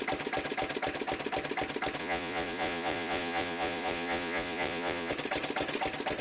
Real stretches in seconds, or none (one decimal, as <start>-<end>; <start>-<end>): 0.0-2.0; 5.1-6.2